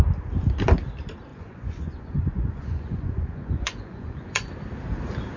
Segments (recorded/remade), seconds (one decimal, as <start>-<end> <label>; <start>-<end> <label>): 0.0-1.3 recorded; 1.3-4.5 remade; 4.5-5.4 recorded